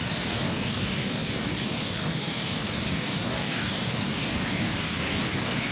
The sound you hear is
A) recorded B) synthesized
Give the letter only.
B